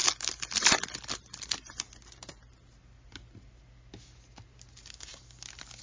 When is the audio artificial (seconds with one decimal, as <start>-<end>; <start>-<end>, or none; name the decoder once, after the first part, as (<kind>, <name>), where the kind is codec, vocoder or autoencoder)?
none